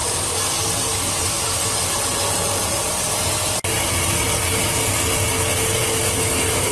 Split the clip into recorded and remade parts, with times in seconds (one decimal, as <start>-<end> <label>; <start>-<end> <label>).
0.0-5.8 recorded; 5.8-6.7 remade